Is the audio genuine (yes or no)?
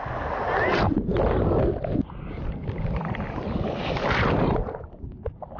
yes